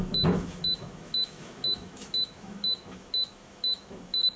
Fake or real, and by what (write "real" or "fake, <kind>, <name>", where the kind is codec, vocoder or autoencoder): fake, autoencoder, DAC-VAE